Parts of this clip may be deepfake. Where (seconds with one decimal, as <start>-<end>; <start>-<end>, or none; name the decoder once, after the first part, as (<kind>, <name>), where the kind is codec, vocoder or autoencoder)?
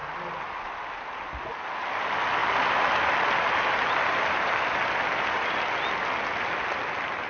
none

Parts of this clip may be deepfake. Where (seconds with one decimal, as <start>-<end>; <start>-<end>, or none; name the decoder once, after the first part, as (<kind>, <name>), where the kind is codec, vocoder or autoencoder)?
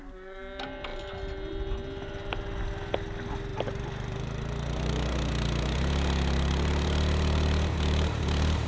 3.5-8.7 (vocoder, BigVGAN v2)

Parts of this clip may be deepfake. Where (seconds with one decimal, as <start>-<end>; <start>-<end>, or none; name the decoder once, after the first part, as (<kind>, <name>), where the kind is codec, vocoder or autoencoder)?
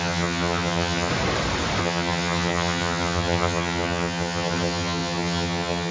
0.0-1.1 (vocoder, HiFi-GAN); 1.8-5.9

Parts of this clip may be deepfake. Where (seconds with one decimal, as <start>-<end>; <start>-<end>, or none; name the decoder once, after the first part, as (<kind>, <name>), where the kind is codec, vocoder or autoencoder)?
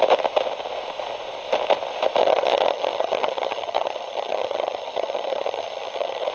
2.2-6.3 (vocoder, HiFi-GAN)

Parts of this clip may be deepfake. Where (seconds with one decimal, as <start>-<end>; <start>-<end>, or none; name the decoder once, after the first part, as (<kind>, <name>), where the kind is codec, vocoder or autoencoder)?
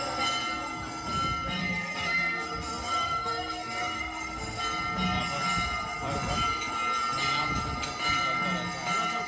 1.6-4.6 (codec, SNAC)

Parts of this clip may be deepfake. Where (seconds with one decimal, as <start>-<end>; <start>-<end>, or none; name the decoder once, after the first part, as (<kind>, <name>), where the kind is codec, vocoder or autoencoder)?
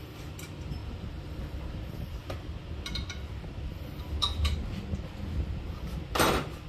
0.8-1.8 (vocoder, BigVGAN v2)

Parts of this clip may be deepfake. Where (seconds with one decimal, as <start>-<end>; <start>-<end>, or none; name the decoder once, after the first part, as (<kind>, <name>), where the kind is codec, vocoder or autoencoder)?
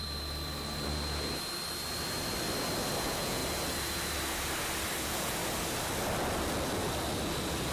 3.0-3.4 (vocoder, Vocos); 5.0-5.4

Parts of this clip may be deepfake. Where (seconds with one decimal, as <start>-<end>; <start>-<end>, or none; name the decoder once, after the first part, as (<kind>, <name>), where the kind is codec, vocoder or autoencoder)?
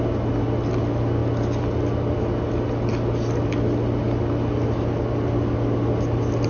none